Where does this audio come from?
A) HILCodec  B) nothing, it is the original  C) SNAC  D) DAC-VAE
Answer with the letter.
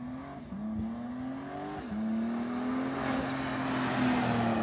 B